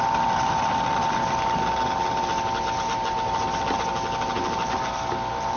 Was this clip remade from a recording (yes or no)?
no